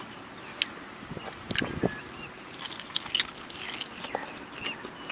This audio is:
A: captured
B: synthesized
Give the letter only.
A